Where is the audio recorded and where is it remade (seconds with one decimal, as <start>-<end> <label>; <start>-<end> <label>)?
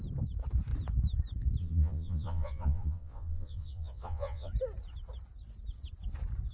0.0-1.6 recorded; 1.6-4.5 remade; 4.5-6.5 recorded